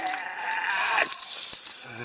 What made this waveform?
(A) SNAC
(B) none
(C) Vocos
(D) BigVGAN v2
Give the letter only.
B